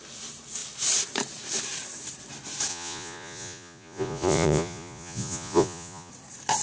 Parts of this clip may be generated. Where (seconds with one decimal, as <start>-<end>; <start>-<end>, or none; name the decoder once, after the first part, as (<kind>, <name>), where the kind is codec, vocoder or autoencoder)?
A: 2.7-6.1 (vocoder, Vocos)